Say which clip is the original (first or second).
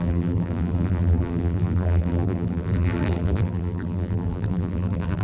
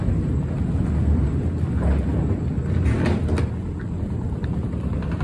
second